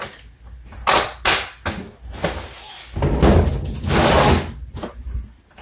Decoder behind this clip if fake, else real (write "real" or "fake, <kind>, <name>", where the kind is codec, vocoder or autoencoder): real